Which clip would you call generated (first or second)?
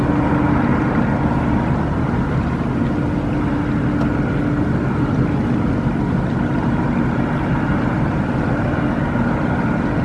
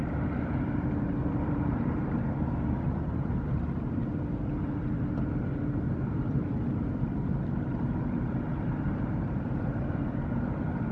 second